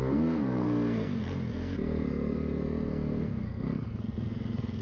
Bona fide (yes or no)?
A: no